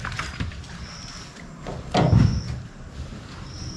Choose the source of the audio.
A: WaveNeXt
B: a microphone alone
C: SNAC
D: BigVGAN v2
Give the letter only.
B